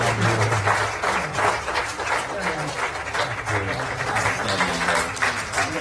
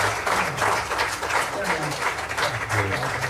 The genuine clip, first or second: first